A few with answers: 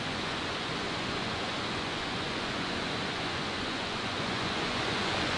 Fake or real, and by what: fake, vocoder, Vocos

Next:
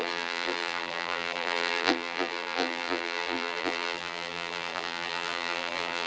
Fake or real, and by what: fake, vocoder, BigVGAN v2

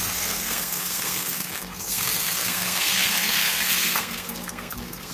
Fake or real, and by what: fake, codec, SNAC